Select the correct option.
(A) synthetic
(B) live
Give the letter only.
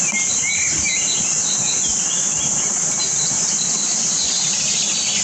B